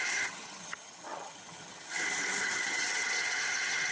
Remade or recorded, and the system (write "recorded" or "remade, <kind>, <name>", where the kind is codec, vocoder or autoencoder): remade, vocoder, HiFi-GAN